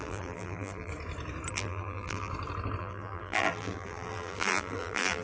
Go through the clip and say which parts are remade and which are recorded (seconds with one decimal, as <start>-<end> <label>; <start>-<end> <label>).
0.0-0.9 remade; 0.9-1.5 recorded; 1.5-2.3 remade; 2.3-2.8 recorded; 2.8-5.2 remade